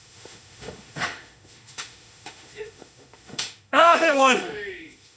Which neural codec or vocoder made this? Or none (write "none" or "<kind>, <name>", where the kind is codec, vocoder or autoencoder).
autoencoder, DAC-VAE